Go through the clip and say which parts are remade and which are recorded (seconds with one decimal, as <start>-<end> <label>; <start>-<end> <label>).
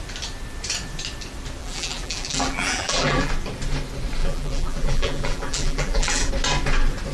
0.0-1.6 recorded; 1.6-3.3 remade; 3.3-4.2 recorded; 4.2-6.3 remade; 6.3-7.1 recorded